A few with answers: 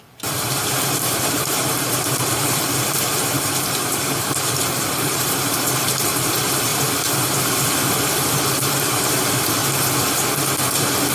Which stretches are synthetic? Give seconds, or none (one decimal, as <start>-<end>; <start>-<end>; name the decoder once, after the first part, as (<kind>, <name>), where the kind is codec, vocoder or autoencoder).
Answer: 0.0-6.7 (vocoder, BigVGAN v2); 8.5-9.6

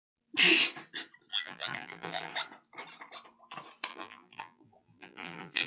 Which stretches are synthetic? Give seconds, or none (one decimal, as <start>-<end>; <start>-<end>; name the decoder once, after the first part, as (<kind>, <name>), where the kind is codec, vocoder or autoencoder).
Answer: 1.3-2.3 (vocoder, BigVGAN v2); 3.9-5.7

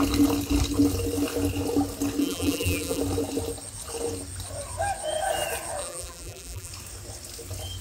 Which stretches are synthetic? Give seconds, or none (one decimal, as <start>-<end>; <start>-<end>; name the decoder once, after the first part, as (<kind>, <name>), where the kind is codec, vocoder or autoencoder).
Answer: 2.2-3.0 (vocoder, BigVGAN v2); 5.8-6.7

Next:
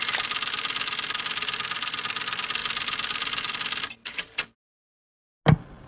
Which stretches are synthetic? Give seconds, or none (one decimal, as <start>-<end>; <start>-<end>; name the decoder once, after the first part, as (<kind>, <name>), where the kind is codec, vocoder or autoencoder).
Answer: 2.6-4.9 (vocoder, BigVGAN v2)

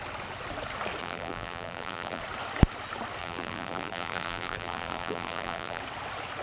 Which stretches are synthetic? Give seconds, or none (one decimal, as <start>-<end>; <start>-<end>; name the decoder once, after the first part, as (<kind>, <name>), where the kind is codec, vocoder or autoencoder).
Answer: 1.0-2.2 (vocoder, BigVGAN v2); 3.2-5.8

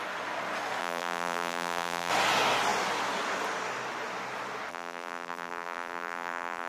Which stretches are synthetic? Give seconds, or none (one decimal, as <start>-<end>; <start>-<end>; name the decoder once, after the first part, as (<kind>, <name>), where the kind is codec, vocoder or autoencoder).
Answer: 0.8-2.1 (vocoder, BigVGAN v2); 4.7-6.7

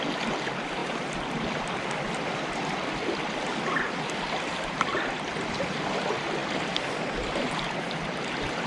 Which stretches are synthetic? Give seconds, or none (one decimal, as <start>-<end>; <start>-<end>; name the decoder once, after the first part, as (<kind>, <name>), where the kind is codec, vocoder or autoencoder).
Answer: 0.8-5.2 (vocoder, BigVGAN v2); 6.4-7.8